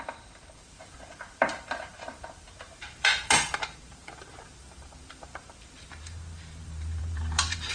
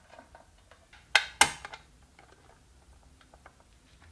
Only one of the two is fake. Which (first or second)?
first